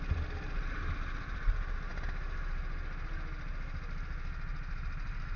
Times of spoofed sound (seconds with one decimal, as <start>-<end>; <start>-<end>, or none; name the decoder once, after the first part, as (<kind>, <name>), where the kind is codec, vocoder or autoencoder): none